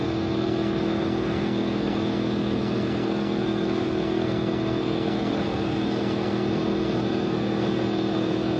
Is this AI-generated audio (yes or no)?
yes